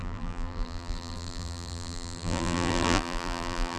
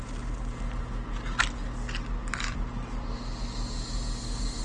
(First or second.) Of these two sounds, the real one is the second